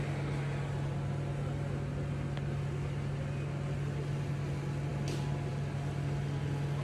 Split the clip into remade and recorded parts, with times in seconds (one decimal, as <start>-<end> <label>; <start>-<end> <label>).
0.0-6.8 recorded